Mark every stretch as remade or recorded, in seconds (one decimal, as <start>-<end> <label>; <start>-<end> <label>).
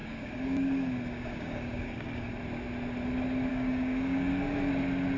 0.0-2.3 remade; 2.3-3.5 recorded; 3.5-4.7 remade; 4.7-5.2 recorded